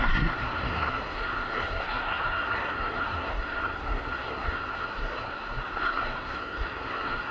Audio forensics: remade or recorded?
remade